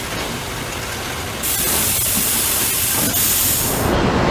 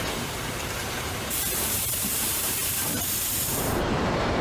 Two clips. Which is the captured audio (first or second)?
first